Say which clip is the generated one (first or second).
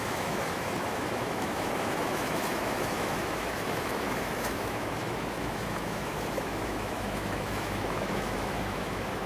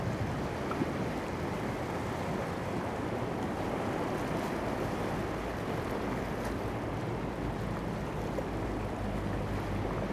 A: first